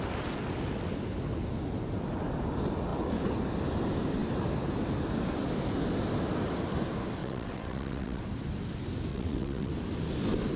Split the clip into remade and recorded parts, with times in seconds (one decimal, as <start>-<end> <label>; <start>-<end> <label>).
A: 0.0-7.2 recorded; 7.2-8.2 remade; 8.2-9.1 recorded; 9.1-9.7 remade; 9.7-10.6 recorded